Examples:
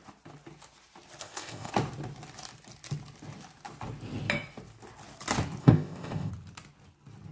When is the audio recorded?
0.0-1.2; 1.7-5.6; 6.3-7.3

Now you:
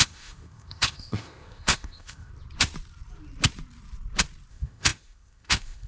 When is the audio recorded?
2.3-4.5

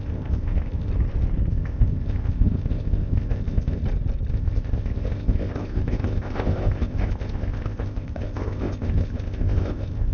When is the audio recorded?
0.9-1.5; 3.8-4.3

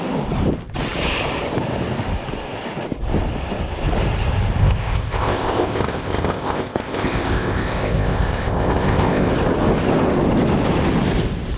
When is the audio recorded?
0.0-4.6; 9.3-11.6

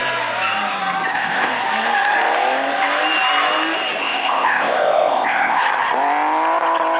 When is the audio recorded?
0.0-1.1; 1.5-4.0; 5.6-7.0

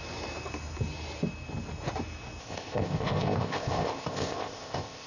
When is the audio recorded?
0.0-2.4

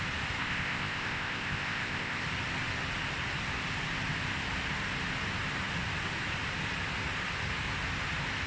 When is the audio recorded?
0.0-0.4; 2.2-8.5